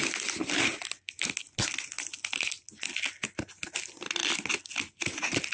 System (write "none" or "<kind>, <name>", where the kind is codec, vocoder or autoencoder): none